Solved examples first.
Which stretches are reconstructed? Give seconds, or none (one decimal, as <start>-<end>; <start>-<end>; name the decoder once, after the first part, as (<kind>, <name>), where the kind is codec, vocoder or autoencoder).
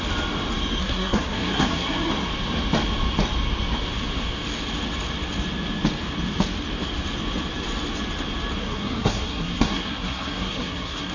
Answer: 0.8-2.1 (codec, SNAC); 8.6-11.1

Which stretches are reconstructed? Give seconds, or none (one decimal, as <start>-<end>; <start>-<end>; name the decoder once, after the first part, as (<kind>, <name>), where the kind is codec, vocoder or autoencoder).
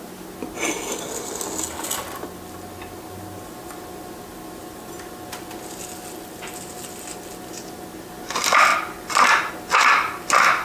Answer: none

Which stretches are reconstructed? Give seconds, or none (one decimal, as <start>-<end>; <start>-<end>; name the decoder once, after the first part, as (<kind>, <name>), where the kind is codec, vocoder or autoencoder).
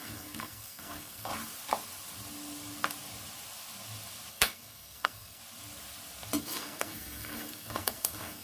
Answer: 0.0-1.3 (codec, SNAC); 4.3-5.4; 6.4-8.4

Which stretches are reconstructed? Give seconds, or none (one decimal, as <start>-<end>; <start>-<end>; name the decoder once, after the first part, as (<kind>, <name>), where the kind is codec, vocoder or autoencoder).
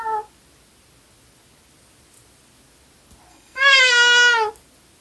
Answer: 3.3-3.9 (codec, SNAC)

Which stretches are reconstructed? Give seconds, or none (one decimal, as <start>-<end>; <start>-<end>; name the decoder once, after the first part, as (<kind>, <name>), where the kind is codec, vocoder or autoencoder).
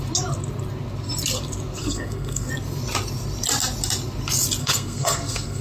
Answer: 1.8-2.5 (codec, SNAC); 4.6-5.6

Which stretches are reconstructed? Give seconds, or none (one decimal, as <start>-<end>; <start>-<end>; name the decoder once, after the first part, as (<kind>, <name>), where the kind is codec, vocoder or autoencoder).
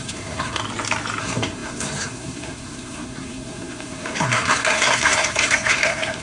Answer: 0.0-0.6 (codec, SNAC); 1.2-6.2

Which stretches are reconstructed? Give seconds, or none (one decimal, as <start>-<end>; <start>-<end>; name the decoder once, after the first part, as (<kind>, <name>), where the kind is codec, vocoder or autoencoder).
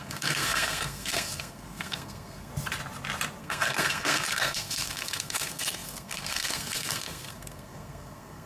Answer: 0.0-2.5 (codec, SNAC); 3.4-8.5